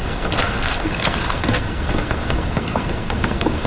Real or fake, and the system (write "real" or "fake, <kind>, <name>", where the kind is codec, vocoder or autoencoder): fake, codec, SNAC